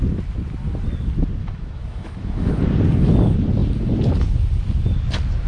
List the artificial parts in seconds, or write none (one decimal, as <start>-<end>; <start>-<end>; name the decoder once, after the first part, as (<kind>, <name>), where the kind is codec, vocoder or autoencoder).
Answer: 1.4-2.5 (autoencoder, DAC-VAE)

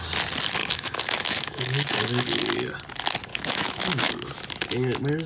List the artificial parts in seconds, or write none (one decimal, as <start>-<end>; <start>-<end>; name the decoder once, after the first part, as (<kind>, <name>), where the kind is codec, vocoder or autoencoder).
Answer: 0.6-2.4 (autoencoder, DAC-VAE); 3.3-4.1

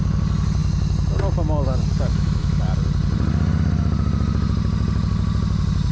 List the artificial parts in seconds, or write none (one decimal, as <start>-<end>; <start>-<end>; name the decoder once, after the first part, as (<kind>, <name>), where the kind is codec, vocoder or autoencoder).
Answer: 2.1-2.6 (autoencoder, DAC-VAE)

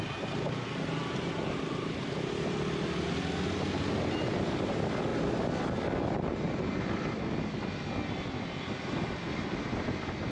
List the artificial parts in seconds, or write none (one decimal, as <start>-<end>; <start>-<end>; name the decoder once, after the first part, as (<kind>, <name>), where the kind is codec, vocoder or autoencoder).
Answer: none

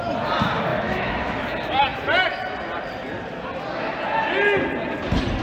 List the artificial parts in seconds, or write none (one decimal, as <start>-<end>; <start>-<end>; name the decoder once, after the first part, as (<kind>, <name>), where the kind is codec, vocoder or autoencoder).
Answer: 0.7-1.4 (autoencoder, DAC-VAE)

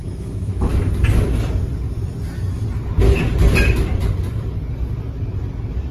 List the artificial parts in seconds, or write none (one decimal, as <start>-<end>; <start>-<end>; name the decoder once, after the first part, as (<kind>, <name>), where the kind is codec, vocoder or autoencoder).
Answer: 0.0-0.7 (autoencoder, DAC-VAE)

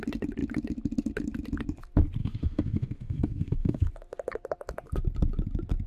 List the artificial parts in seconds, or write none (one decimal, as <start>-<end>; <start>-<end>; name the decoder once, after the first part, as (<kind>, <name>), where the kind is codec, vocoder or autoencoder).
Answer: 2.2-3.9 (autoencoder, DAC-VAE)